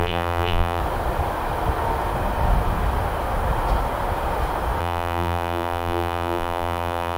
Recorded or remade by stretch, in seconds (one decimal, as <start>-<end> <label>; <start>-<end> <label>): 0.0-0.8 remade; 0.8-4.8 recorded; 4.8-7.2 remade